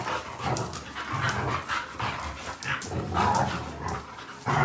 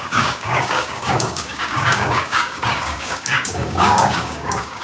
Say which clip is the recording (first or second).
first